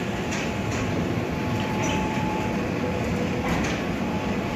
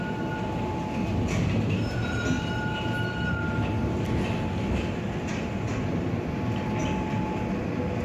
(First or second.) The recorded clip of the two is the second